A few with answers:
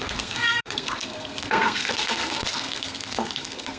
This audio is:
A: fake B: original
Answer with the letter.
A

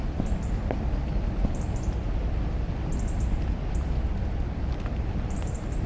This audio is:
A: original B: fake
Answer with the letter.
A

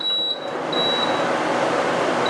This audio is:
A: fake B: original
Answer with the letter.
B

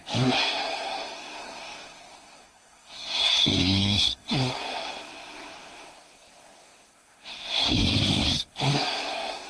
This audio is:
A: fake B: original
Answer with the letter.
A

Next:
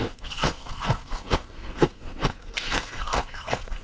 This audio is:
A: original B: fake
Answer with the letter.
B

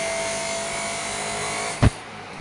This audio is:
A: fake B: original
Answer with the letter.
B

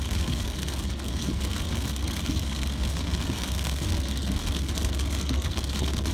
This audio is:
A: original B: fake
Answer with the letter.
B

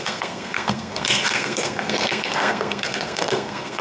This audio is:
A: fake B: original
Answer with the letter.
A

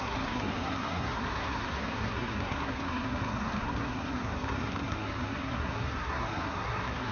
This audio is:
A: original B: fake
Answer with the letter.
B